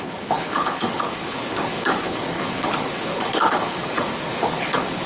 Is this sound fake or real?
fake